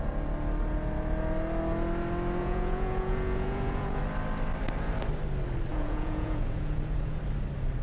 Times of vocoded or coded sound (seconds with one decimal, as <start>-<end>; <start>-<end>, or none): 2.4-4.0; 5.7-7.2